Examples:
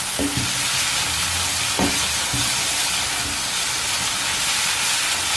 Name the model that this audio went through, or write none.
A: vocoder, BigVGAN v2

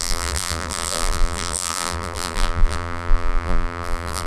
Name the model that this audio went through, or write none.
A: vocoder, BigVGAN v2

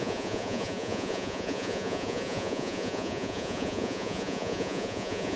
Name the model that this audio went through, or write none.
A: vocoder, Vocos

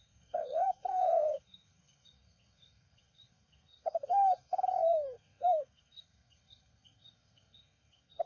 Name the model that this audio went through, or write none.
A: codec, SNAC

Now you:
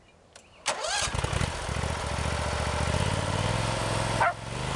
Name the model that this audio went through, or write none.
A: none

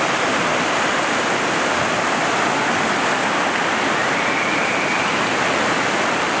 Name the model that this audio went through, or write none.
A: none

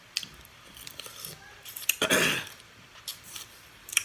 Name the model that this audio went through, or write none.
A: vocoder, BigVGAN v2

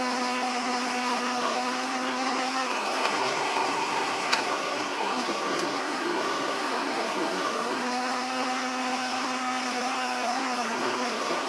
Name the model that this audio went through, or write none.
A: codec, SNAC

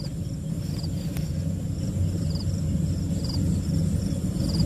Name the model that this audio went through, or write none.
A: vocoder, BigVGAN v2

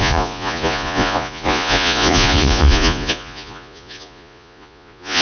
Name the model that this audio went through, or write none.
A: vocoder, Vocos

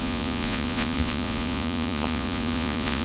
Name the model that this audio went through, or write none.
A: vocoder, Vocos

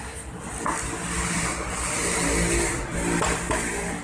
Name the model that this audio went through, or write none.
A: none